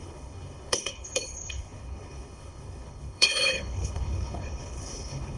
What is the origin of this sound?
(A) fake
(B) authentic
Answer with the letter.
A